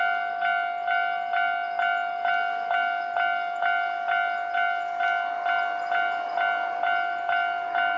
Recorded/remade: recorded